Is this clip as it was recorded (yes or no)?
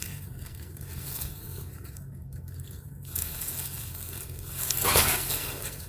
no